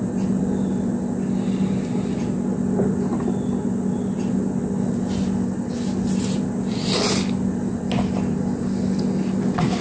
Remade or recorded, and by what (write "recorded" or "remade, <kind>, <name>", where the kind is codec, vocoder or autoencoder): recorded